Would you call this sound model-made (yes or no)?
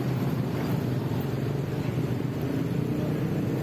no